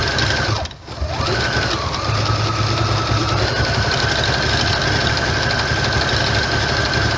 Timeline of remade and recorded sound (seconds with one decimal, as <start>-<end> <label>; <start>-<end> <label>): 0.0-7.2 recorded

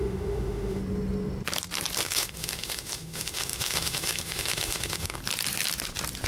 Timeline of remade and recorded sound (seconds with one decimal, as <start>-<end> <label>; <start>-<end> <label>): 0.0-0.8 remade; 0.8-2.0 recorded; 2.0-5.2 remade; 5.2-6.3 recorded

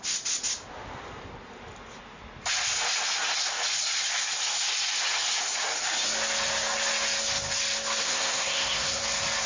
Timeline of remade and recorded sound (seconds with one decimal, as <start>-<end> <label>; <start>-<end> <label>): 0.0-8.0 recorded; 8.0-9.0 remade; 9.0-9.5 recorded

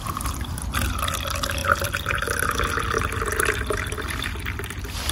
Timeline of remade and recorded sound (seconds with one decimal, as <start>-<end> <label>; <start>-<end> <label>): 0.0-5.1 recorded

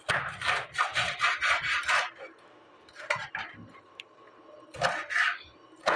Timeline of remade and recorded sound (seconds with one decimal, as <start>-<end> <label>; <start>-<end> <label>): 0.0-0.9 recorded; 0.9-4.5 remade; 4.5-6.0 recorded

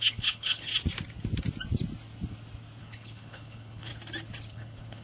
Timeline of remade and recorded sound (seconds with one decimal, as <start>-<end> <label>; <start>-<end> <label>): 0.0-0.7 remade; 0.7-2.8 recorded; 2.8-3.9 remade; 3.9-4.5 recorded; 4.5-5.0 remade

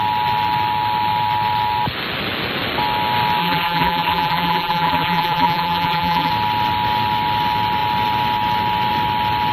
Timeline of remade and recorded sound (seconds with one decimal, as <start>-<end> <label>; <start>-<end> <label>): 0.0-3.4 recorded; 3.4-6.3 remade; 6.3-9.5 recorded

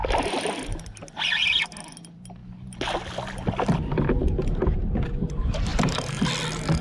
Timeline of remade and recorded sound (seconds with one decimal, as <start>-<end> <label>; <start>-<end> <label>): 0.0-5.7 recorded; 5.7-6.3 remade; 6.3-6.8 recorded